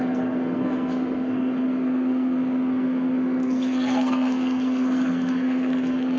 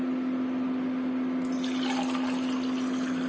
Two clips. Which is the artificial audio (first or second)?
first